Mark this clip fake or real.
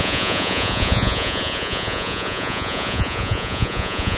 fake